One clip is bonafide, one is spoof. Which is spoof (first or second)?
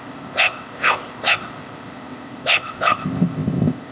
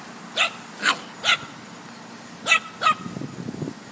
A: first